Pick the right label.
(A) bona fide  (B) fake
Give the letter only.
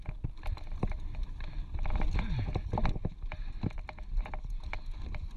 A